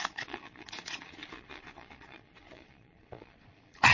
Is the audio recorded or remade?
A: remade